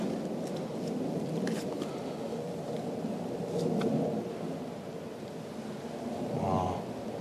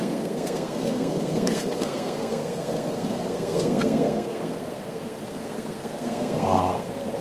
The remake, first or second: second